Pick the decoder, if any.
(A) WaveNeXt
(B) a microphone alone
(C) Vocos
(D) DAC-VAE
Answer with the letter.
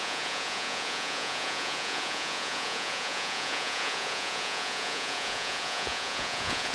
C